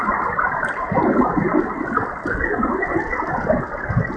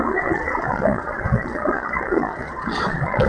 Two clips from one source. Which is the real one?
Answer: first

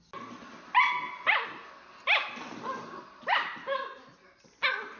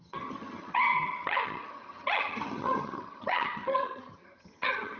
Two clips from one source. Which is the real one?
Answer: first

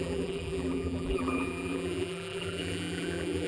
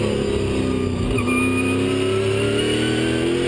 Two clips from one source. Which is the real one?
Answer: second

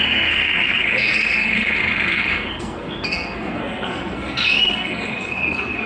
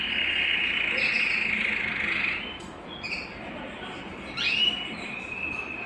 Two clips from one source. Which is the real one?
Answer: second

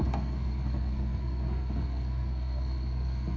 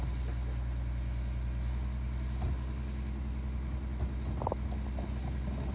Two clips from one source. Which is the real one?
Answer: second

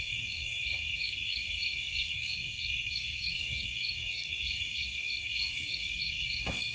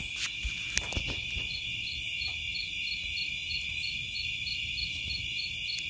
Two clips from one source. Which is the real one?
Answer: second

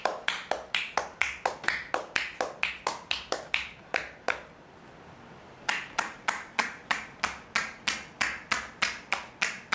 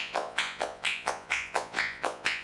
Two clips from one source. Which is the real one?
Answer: first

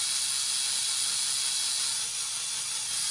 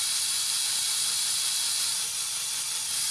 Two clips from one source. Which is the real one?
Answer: first